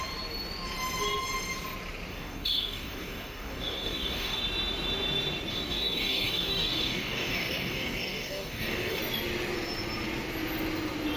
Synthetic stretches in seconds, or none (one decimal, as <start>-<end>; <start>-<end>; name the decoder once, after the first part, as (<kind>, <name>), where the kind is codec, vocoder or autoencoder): 2.1-4.4 (codec, DAC); 5.5-9.0